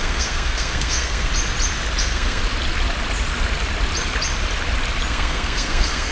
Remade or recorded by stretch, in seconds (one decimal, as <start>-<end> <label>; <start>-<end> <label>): 0.0-1.3 remade; 1.3-2.0 recorded; 2.0-2.4 remade; 2.4-5.1 recorded; 5.1-6.1 remade